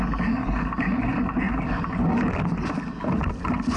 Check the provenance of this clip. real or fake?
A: real